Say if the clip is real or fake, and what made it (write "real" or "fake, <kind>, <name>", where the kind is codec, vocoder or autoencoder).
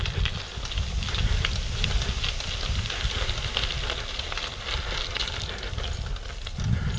real